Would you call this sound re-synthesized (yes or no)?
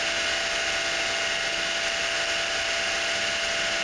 no